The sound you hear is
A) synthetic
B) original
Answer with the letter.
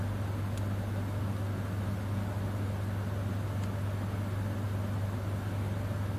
B